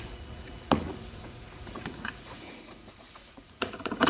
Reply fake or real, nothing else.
fake